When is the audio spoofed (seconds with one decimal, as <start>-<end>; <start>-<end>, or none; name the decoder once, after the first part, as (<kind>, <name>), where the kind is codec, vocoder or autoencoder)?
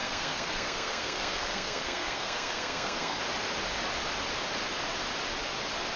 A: 0.0-3.2 (codec, SNAC)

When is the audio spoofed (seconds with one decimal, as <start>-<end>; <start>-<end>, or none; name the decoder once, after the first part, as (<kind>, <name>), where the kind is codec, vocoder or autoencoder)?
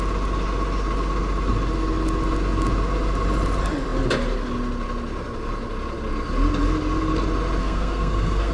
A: 7.6-8.5 (codec, SNAC)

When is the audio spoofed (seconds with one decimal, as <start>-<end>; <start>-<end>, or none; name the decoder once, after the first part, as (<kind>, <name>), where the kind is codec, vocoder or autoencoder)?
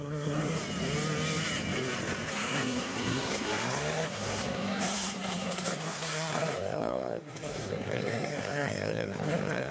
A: 0.0-0.6 (codec, SNAC); 2.3-9.7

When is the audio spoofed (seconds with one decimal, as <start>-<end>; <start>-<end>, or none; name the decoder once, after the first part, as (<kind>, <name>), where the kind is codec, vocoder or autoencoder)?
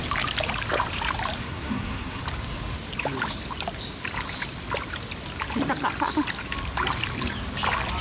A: 1.4-2.2 (codec, SNAC)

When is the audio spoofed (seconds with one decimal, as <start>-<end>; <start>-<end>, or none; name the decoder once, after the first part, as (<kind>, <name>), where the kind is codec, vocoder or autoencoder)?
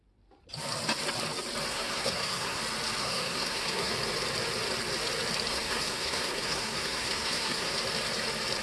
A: 1.7-2.6 (codec, SNAC); 3.0-3.9; 5.5-7.7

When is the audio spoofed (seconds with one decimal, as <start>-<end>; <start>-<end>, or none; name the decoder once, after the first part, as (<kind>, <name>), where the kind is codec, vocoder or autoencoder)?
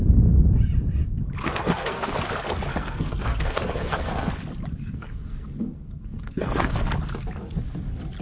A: 1.4-2.1 (codec, SNAC); 2.7-4.3; 4.8-6.8